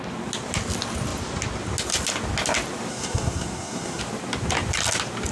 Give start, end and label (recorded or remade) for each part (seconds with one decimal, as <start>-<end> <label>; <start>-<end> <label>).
0.0-2.9 recorded; 2.9-4.0 remade; 4.0-5.3 recorded